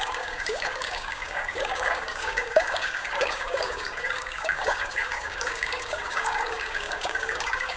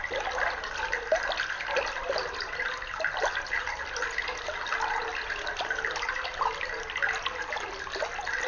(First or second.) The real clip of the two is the second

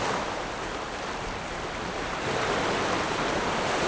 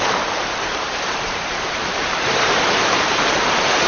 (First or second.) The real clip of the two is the first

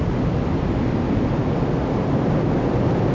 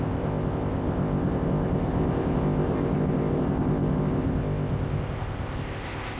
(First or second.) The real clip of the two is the first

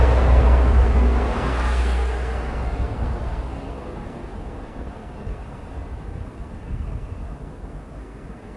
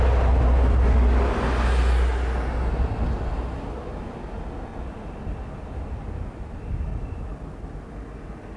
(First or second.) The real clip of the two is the second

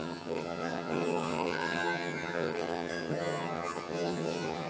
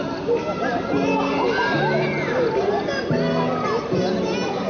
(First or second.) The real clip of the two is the second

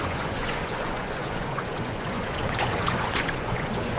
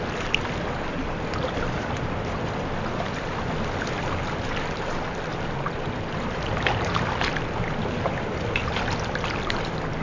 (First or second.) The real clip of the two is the second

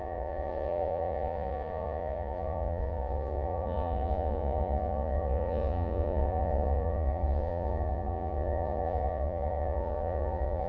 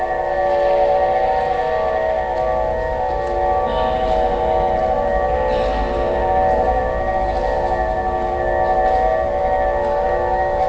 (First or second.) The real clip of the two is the second